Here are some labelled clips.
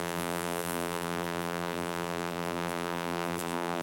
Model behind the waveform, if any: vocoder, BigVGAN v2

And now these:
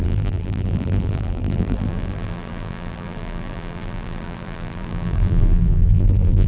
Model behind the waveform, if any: vocoder, BigVGAN v2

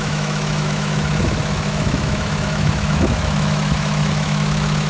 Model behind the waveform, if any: autoencoder, DAC-VAE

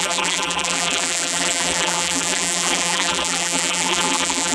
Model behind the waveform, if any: vocoder, BigVGAN v2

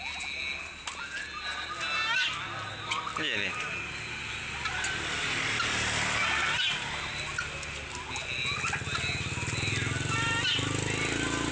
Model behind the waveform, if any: none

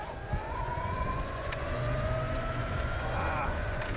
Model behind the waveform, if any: vocoder, Vocos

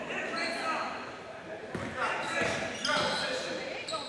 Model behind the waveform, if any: none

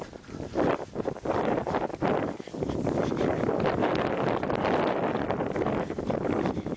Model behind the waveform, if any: vocoder, BigVGAN v2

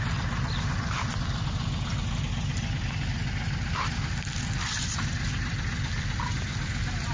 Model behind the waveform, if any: none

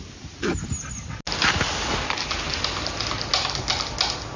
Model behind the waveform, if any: none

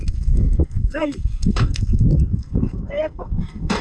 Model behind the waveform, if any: codec, SNAC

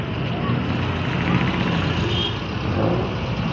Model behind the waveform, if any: none